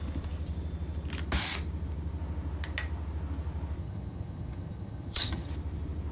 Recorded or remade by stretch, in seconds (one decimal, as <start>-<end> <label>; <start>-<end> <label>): 0.0-3.8 recorded; 3.8-5.5 remade; 5.5-6.1 recorded